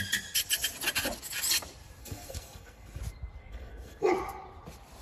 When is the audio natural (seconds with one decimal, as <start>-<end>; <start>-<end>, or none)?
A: 0.0-2.0; 3.0-3.4; 4.1-5.0